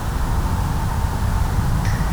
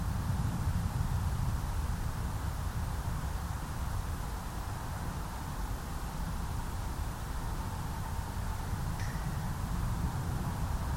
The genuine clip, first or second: first